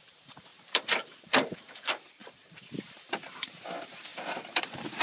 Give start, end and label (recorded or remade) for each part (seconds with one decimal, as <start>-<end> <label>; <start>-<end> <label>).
0.0-5.0 remade